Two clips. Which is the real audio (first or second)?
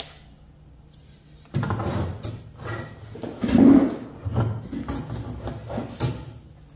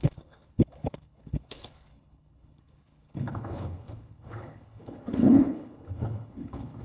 first